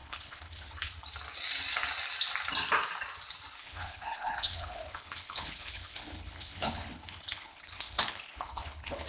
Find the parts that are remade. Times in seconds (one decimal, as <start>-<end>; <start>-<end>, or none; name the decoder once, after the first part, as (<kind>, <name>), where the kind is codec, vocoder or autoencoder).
0.0-0.9 (codec, HILCodec); 3.6-9.1